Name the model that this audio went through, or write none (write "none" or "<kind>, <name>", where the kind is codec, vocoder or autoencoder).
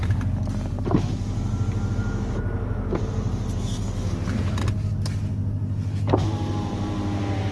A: none